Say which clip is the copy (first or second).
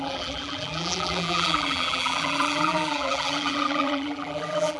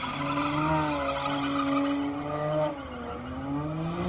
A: first